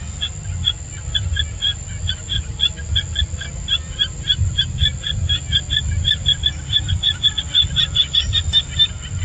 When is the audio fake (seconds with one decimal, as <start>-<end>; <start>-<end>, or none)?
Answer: none